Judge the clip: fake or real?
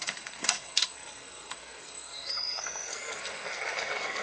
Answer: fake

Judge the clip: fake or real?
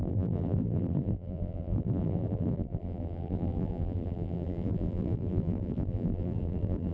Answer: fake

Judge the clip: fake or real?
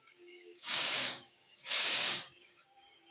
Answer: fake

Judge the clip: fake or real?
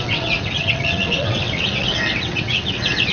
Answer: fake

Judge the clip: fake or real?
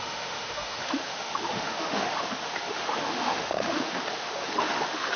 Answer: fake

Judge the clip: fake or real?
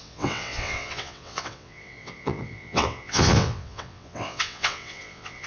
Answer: fake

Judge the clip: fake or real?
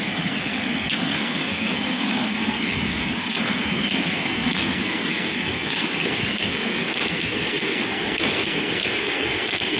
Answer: fake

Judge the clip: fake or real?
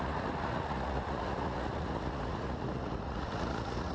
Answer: fake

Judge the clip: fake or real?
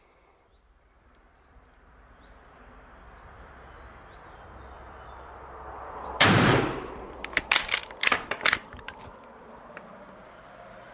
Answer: fake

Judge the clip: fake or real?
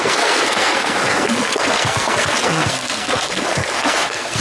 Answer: fake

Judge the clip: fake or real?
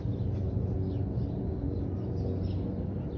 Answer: real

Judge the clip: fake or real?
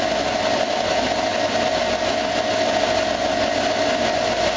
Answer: real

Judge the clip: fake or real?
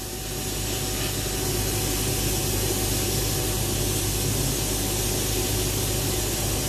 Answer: real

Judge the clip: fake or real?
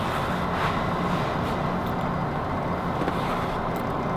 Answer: real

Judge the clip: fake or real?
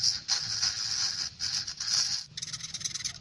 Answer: real